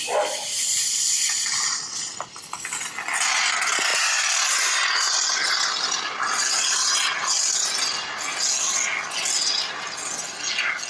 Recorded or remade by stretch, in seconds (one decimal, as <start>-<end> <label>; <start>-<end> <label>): 0.0-10.9 recorded